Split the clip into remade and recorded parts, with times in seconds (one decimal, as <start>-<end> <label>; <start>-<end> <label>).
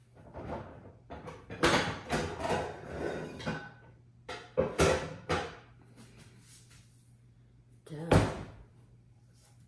0.0-9.7 recorded